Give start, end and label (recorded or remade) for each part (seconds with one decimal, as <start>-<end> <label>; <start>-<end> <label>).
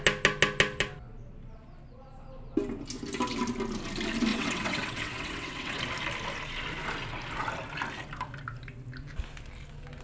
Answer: 0.0-4.3 recorded; 4.3-5.8 remade; 5.8-10.0 recorded